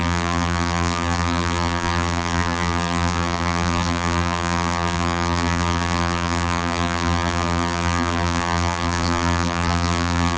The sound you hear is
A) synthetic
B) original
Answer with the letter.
A